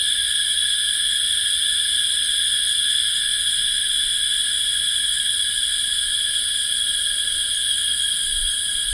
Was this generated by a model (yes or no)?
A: no